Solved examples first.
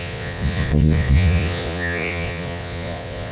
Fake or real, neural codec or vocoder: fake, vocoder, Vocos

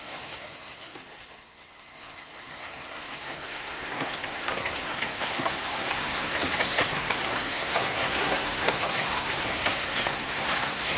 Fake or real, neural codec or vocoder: fake, codec, SNAC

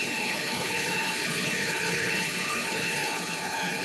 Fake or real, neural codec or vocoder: fake, codec, HILCodec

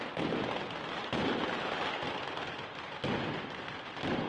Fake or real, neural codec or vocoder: real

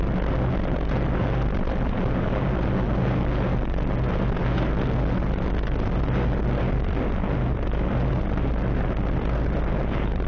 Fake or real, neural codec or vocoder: real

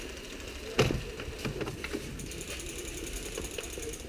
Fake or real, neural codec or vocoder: real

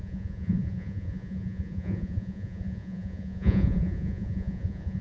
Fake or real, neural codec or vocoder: fake, vocoder, Vocos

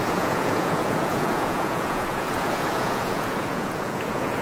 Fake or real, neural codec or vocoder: fake, vocoder, Vocos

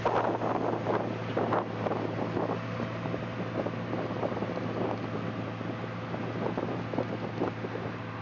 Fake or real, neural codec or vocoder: real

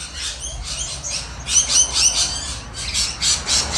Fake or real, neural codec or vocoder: real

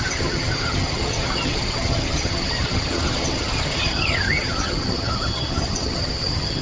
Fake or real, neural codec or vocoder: fake, vocoder, HiFi-GAN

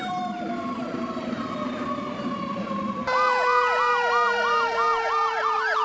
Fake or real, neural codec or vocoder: fake, vocoder, BigVGAN v2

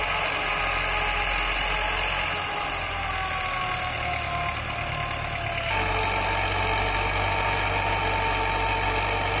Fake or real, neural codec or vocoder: real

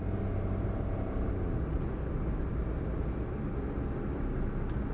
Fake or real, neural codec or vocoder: real